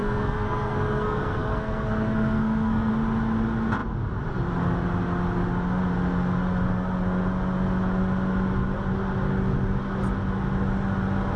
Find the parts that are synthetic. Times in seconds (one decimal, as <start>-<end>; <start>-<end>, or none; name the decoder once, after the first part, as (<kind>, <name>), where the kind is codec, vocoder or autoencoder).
0.0-2.9 (codec, SNAC)